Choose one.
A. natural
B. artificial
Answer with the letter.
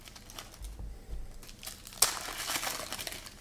A